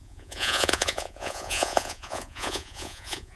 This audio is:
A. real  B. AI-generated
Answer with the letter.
B